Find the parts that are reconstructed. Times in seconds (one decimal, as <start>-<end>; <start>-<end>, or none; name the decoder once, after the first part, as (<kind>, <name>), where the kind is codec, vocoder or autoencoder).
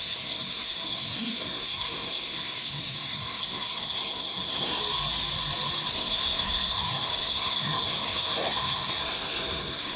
0.0-4.8 (codec, SNAC); 5.9-10.0